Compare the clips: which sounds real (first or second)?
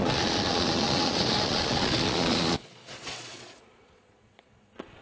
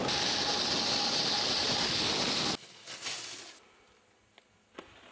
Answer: second